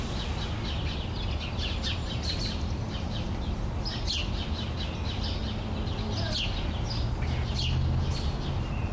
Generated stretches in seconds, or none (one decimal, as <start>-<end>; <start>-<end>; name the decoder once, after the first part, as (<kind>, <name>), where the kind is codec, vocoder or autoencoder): none